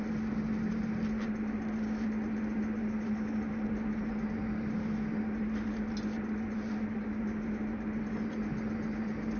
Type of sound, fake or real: real